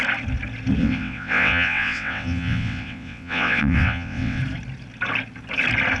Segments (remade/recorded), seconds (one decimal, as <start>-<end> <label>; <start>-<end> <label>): 0.0-0.8 recorded; 0.8-4.4 remade; 4.4-6.0 recorded